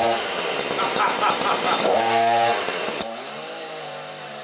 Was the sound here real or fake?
fake